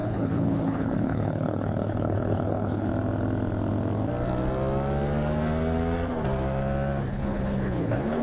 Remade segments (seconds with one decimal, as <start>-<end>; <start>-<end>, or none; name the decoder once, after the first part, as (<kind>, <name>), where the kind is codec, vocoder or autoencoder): 0.0-2.9 (codec, HILCodec); 7.1-8.2